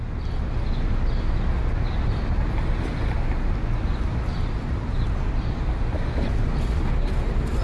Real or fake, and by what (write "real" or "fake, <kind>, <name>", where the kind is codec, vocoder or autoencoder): real